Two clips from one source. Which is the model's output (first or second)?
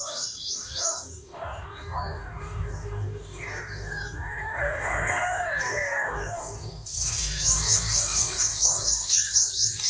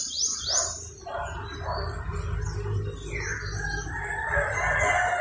first